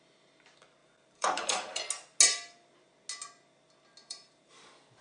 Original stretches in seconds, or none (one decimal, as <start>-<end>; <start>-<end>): 0.0-0.8; 1.8-4.0; 4.6-5.0